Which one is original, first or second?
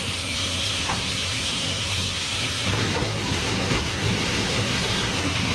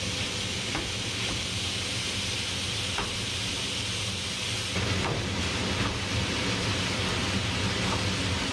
second